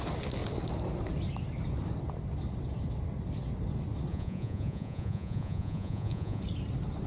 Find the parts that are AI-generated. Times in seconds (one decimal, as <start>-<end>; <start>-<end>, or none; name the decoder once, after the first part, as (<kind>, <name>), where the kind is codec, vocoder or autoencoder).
4.1-6.4 (vocoder, Vocos)